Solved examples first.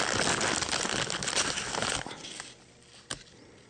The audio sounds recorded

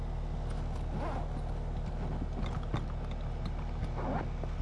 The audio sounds recorded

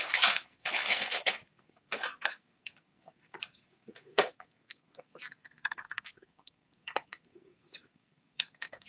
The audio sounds remade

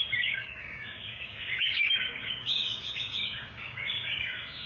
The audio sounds remade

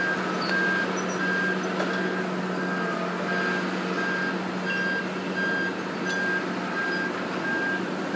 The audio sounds recorded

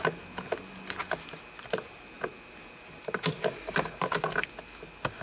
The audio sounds recorded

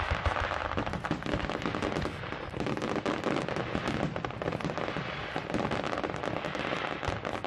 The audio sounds recorded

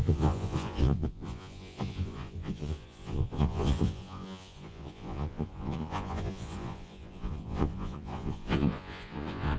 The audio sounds remade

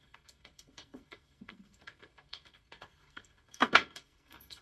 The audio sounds remade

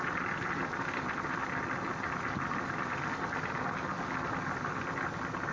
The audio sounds recorded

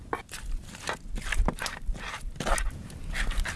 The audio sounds recorded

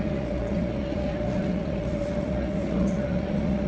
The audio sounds remade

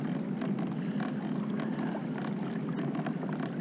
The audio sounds recorded